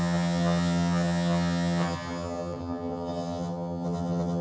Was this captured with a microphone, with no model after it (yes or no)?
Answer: no